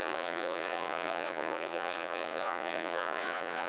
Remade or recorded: remade